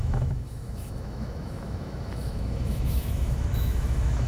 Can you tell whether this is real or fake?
fake